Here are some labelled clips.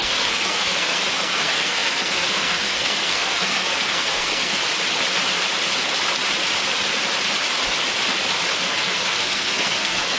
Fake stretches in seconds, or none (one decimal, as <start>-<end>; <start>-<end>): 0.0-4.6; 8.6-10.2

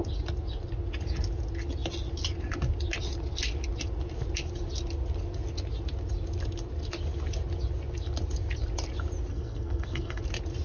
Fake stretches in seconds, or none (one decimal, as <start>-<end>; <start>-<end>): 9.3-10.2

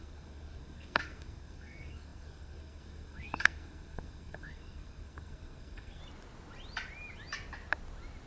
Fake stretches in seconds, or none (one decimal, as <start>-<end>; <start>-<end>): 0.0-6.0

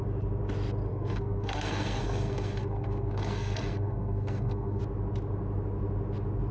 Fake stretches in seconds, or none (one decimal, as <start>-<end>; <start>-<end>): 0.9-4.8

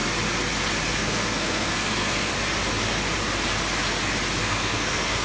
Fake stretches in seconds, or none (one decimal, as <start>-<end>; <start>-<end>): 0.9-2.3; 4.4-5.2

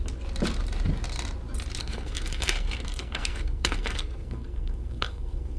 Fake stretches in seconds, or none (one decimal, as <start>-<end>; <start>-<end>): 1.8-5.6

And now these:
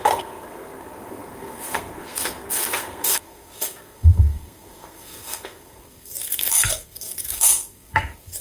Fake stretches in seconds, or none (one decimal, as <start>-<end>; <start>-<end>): 0.0-8.4

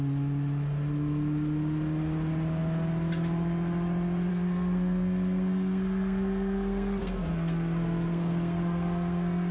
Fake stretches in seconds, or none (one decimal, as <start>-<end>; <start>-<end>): 4.3-9.5